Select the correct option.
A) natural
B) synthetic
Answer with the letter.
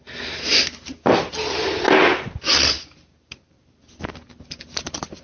A